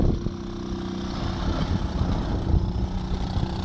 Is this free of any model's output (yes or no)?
yes